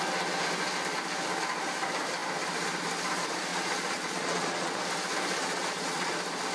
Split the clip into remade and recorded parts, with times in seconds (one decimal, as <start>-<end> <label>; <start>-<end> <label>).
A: 0.0-3.5 recorded; 3.5-4.8 remade; 4.8-5.4 recorded; 5.4-6.1 remade; 6.1-6.5 recorded